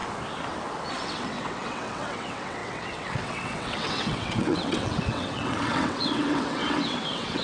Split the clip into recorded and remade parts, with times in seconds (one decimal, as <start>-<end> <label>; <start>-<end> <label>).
0.0-0.9 recorded; 0.9-7.4 remade